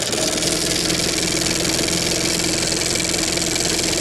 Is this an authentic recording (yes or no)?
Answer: yes